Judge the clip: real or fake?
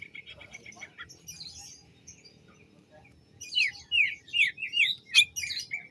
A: real